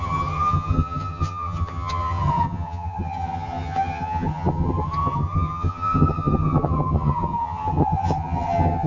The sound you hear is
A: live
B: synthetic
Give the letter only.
B